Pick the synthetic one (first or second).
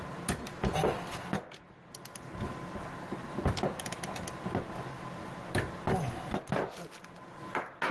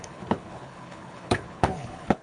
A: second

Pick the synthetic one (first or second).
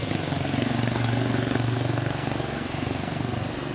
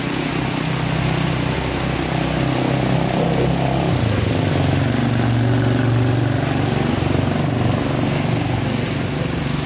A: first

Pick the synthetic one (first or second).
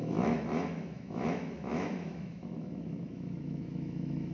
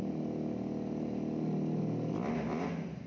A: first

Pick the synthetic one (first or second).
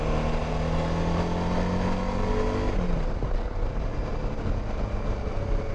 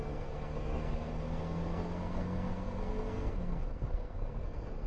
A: second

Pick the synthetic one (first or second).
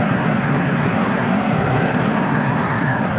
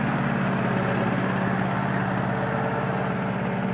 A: first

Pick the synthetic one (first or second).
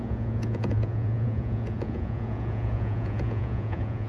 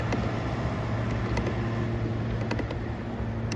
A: first